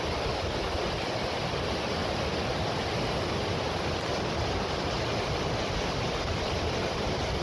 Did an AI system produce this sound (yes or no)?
no